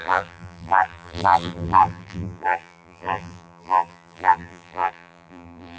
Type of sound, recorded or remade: remade